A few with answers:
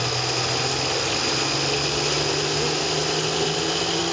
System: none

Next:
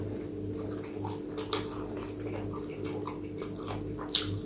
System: none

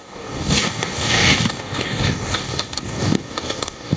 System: codec, DAC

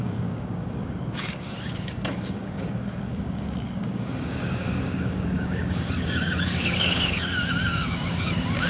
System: codec, DAC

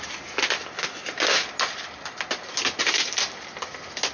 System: none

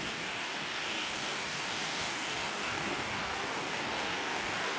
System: codec, DAC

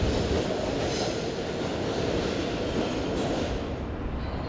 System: none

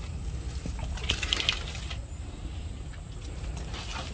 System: none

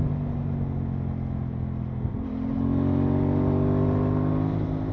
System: none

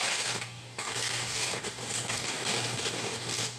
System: codec, DAC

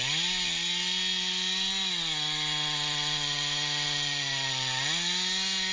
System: none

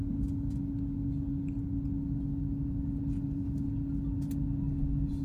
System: none